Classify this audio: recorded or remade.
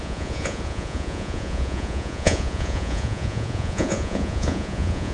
remade